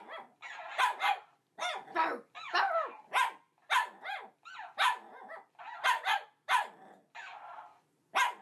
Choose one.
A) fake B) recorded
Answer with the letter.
B